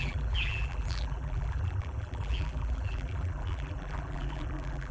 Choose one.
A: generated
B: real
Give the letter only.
A